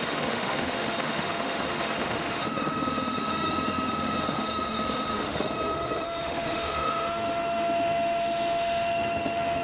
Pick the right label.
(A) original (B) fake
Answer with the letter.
B